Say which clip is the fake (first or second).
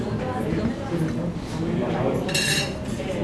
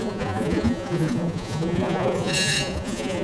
second